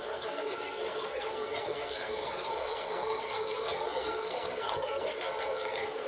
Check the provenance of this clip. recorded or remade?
remade